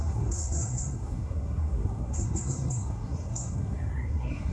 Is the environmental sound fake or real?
fake